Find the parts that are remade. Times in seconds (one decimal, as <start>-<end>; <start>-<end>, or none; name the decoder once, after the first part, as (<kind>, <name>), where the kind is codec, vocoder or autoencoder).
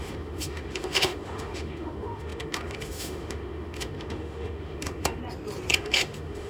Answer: 0.0-5.2 (autoencoder, DAC-VAE); 5.8-6.5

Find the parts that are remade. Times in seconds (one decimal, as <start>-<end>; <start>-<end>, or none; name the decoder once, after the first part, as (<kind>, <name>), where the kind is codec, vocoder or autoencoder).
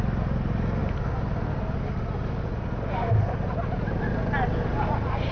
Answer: none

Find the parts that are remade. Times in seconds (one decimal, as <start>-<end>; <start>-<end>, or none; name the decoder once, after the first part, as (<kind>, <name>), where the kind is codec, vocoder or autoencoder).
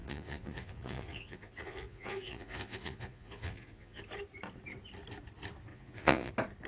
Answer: 0.0-4.0 (vocoder, Vocos); 5.7-6.3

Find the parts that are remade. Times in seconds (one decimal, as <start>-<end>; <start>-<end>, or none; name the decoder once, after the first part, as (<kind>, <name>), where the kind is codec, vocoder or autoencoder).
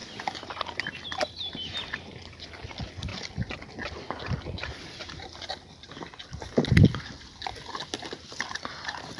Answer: none